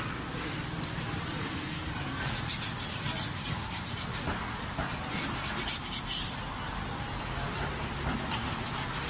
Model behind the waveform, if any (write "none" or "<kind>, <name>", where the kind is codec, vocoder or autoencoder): none